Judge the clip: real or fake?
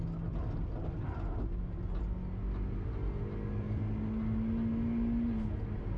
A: real